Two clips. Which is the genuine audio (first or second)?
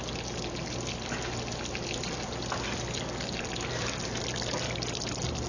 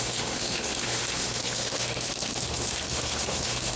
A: first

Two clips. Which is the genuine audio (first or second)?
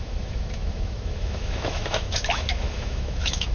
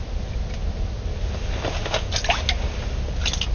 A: second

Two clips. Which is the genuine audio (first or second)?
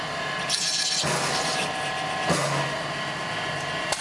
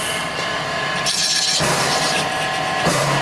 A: first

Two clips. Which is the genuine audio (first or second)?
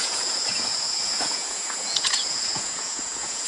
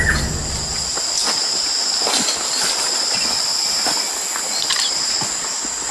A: second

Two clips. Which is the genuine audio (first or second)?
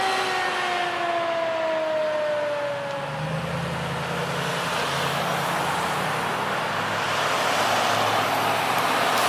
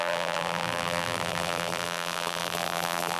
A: first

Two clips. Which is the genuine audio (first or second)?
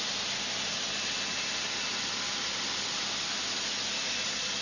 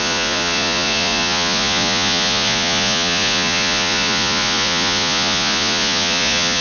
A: first